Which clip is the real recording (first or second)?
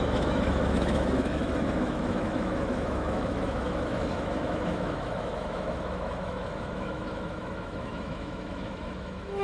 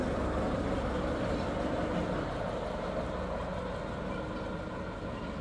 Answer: second